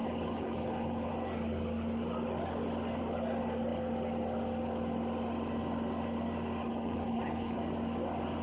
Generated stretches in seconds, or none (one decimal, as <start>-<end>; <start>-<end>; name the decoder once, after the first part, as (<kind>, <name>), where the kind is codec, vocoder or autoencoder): 0.0-1.1 (codec, HILCodec); 6.6-7.6